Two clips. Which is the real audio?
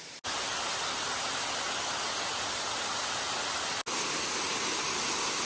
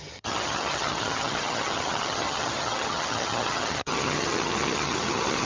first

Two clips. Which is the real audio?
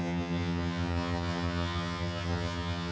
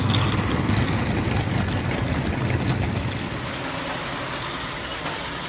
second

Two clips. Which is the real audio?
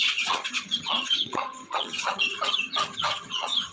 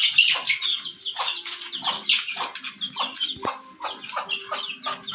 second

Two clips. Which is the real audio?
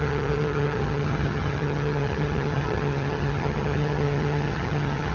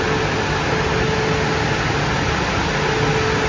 second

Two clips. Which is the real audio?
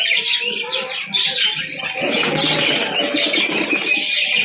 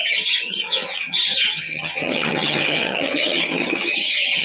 first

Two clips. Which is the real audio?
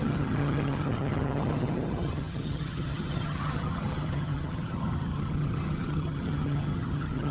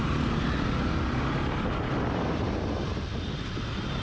second